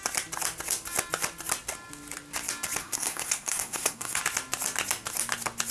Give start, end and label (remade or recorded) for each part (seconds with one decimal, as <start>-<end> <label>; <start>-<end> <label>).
0.0-2.8 recorded; 2.8-4.2 remade; 4.2-5.7 recorded